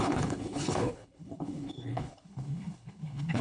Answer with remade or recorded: remade